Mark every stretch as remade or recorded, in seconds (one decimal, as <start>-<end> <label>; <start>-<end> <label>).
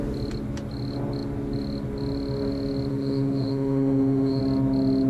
0.0-2.9 recorded; 2.9-4.4 remade; 4.4-5.1 recorded